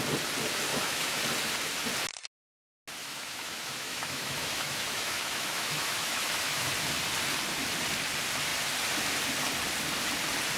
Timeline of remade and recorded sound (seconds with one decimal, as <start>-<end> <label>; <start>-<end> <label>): 0.0-0.7 recorded; 0.7-1.2 remade; 1.2-3.0 recorded; 3.0-6.7 remade; 6.7-10.6 recorded